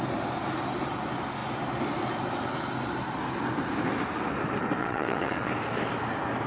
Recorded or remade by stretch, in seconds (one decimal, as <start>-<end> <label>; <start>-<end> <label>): 0.0-4.8 recorded; 4.8-5.5 remade; 5.5-6.5 recorded